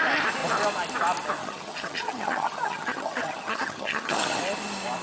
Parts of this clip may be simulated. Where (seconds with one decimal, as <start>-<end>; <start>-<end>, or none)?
1.4-4.4